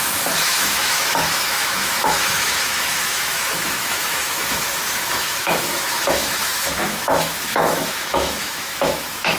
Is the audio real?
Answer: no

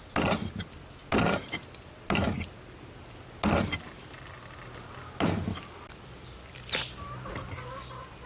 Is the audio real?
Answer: yes